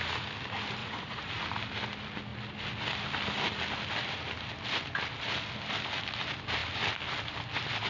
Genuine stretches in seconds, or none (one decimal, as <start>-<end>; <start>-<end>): 0.0-0.8; 1.3-7.9